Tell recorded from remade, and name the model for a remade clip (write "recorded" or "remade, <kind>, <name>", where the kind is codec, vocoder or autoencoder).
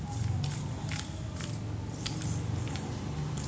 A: recorded